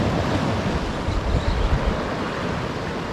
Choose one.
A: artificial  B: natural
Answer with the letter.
B